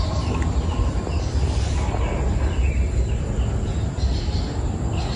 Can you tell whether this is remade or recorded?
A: recorded